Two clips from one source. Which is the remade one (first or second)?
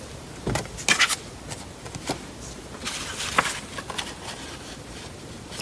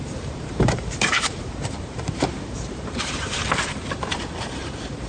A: second